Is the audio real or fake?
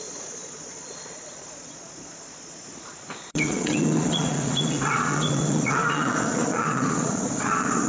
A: fake